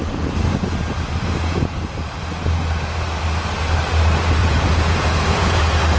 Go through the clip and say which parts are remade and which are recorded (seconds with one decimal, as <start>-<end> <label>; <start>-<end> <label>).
0.0-4.4 recorded; 4.4-5.6 remade; 5.6-6.0 recorded